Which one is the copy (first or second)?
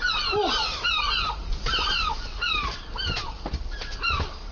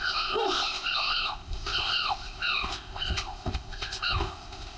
second